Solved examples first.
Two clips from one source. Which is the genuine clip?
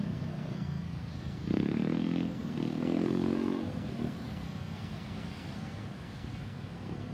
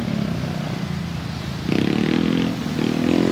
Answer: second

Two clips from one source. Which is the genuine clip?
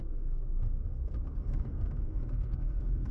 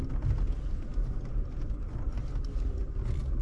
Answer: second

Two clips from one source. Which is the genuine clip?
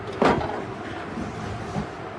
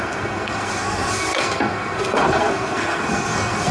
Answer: first